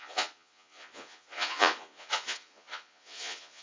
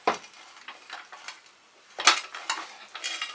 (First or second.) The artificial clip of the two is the first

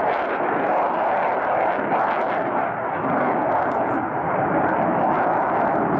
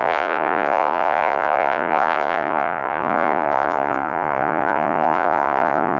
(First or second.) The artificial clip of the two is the second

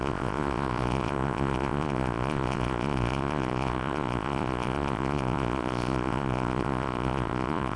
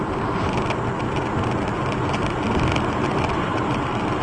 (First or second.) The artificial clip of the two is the first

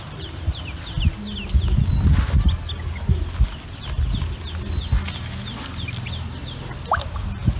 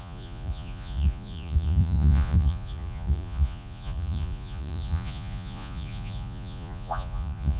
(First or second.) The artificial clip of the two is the second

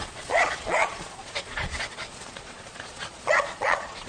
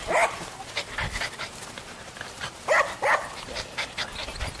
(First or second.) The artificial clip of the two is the first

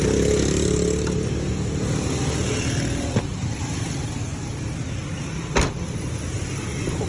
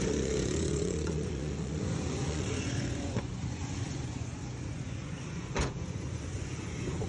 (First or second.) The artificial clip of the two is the second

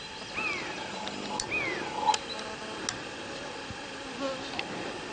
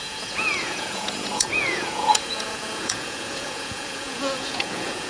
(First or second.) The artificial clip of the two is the second